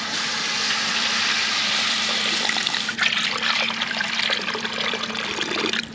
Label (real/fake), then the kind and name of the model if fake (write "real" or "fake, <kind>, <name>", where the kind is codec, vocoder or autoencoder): fake, vocoder, BigVGAN v2